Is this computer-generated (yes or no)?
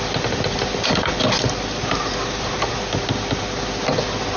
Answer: no